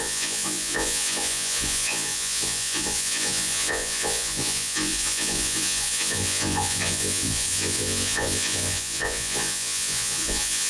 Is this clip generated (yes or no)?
yes